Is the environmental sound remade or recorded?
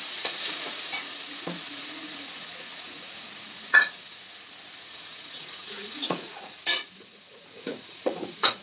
remade